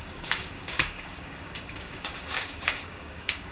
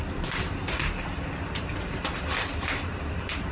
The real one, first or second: second